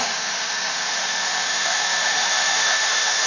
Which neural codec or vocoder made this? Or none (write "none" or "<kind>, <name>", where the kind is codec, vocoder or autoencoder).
autoencoder, DAC-VAE